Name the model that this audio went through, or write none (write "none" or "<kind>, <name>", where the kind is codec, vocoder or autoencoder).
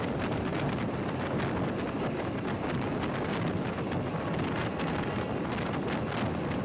none